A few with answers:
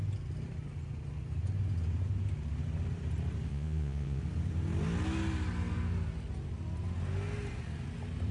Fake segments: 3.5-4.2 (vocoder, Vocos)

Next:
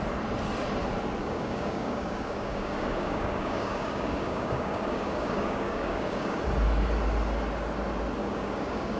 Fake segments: 1.2-6.4 (codec, DAC); 8.2-9.0

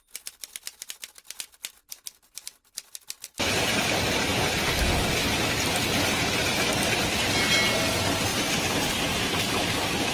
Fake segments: none

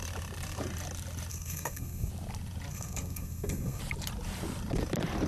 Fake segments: 1.3-2.1 (codec, SNAC); 2.7-3.8

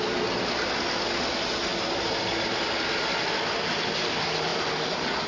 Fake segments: 4.5-5.3 (vocoder, BigVGAN v2)

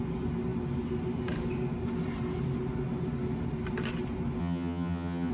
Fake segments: 4.4-5.3 (vocoder, HiFi-GAN)